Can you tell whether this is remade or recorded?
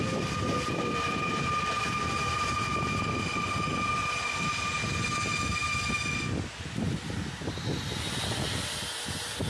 recorded